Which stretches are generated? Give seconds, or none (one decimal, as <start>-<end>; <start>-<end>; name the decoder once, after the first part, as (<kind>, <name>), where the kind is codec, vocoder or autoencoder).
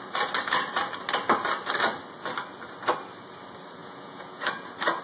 3.8-4.5 (vocoder, Vocos)